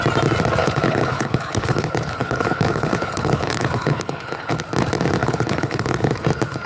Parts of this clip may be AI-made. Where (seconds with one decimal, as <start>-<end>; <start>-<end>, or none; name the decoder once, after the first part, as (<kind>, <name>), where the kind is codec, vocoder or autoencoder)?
0.6-4.6 (codec, HILCodec); 5.2-6.1